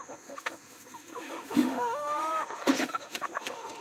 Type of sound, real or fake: fake